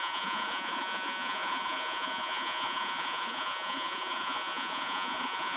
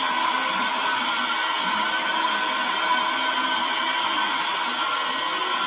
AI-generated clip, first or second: first